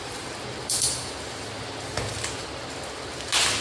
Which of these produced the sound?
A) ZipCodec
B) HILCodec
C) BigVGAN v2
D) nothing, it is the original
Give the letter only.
D